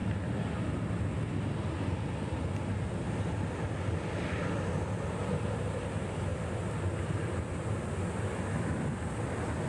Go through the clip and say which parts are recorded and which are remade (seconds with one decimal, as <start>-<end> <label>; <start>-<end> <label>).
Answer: 0.0-9.7 recorded